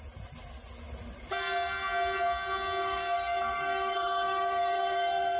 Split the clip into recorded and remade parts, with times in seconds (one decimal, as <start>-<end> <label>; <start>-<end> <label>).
0.0-2.8 recorded; 2.8-5.4 remade